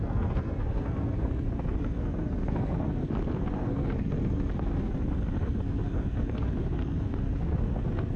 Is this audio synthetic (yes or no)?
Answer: yes